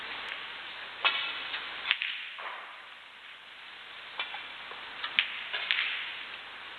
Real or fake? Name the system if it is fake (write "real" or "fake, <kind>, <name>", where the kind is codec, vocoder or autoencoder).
real